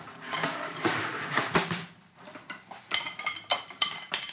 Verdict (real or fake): fake